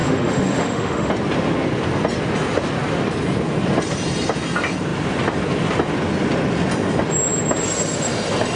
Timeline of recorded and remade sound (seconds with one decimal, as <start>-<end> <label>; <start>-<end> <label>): 0.0-1.1 remade; 1.1-8.6 recorded